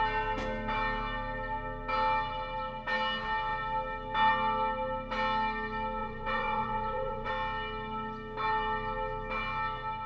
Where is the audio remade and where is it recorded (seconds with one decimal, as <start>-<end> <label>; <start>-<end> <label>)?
0.0-6.0 recorded; 6.0-7.3 remade; 7.3-10.1 recorded

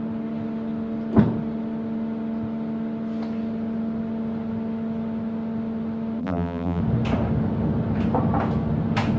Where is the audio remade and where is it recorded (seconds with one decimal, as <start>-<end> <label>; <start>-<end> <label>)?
0.0-6.2 recorded; 6.2-6.8 remade; 6.8-9.2 recorded

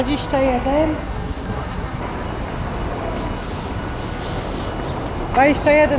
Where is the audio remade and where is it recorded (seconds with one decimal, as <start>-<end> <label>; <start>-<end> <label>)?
0.0-1.0 recorded; 1.0-2.0 remade; 2.0-6.0 recorded

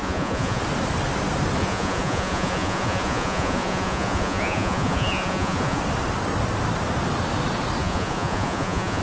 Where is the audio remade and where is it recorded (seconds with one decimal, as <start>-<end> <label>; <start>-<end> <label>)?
0.0-0.6 remade; 0.6-1.6 recorded; 1.6-5.8 remade; 5.8-7.8 recorded; 7.8-9.0 remade

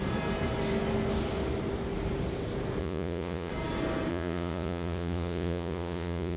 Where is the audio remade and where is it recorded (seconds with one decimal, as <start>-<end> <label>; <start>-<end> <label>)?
0.0-2.8 recorded; 2.8-3.5 remade; 3.5-4.1 recorded; 4.1-6.4 remade

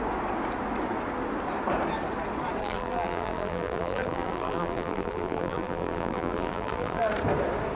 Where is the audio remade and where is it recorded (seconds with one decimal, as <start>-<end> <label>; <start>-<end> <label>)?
0.0-2.6 recorded; 2.6-7.1 remade; 7.1-7.8 recorded

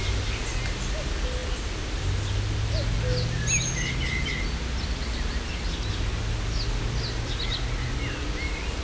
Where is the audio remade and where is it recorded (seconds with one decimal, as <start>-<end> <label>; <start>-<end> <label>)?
0.0-8.8 recorded

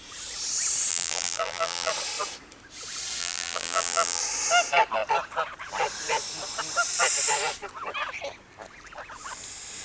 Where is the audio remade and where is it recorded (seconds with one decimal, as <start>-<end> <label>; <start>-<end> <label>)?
0.0-0.9 recorded; 0.9-1.9 remade; 1.9-3.2 recorded; 3.2-4.2 remade; 4.2-9.8 recorded